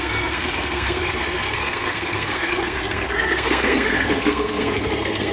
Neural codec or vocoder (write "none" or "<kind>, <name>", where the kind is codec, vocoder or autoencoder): codec, SNAC